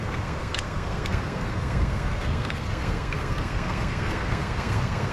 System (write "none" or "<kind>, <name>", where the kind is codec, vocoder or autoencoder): codec, SNAC